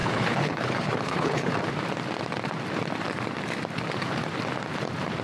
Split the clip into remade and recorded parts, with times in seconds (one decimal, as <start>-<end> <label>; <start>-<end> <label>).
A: 0.0-1.5 remade; 1.5-5.2 recorded